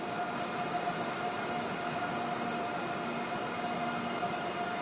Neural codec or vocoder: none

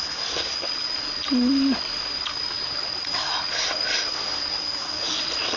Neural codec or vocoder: none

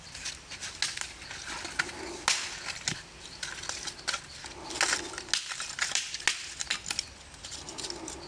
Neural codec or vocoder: none